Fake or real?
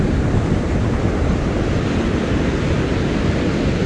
real